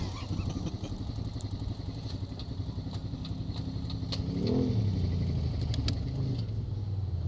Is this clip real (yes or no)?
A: yes